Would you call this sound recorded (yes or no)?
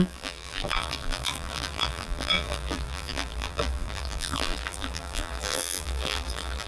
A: no